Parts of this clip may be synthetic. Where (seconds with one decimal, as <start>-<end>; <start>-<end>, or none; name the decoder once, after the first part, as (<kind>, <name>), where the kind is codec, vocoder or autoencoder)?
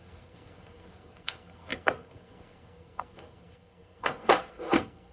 0.0-5.1 (codec, SNAC)